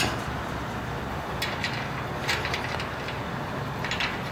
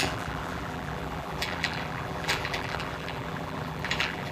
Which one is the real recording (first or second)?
first